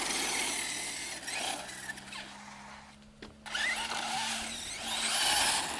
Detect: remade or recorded recorded